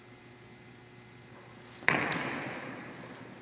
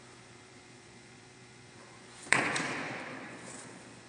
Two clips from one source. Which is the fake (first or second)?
second